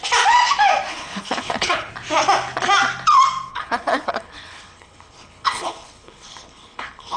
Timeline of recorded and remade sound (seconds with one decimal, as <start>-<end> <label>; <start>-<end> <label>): 0.0-0.9 recorded; 0.9-1.9 remade; 1.9-3.5 recorded; 3.5-7.2 remade